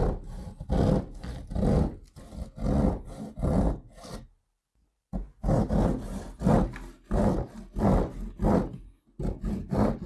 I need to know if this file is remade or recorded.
recorded